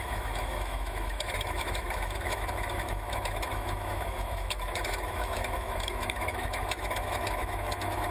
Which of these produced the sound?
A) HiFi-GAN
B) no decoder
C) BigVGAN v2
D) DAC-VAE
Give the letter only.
D